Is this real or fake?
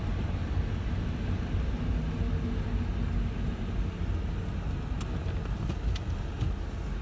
real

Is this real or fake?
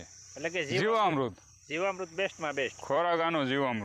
fake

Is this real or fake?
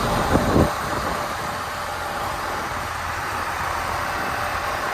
fake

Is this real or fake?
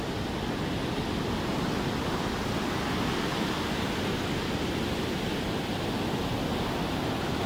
real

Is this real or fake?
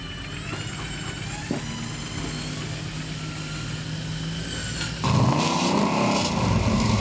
real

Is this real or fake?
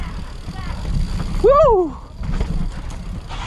real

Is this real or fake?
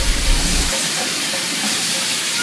fake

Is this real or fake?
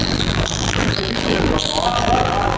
fake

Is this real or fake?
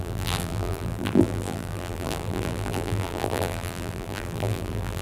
fake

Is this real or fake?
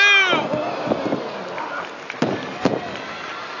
real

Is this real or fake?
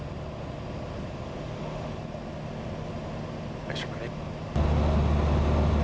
real